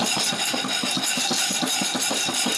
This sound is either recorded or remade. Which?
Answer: recorded